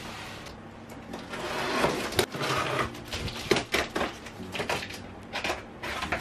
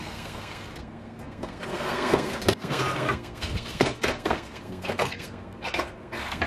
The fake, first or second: second